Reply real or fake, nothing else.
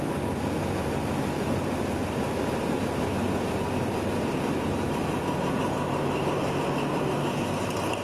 real